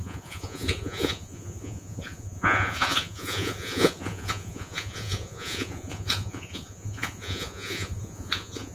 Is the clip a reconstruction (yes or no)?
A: yes